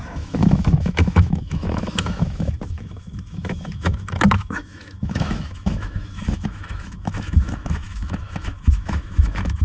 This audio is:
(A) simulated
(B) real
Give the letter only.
A